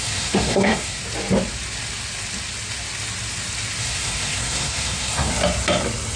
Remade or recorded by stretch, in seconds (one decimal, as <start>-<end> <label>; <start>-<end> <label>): 0.0-1.0 remade; 1.0-3.8 recorded; 3.8-5.3 remade; 5.3-6.2 recorded